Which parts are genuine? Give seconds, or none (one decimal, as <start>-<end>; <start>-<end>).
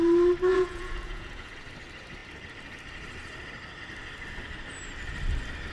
0.0-0.5; 1.5-5.7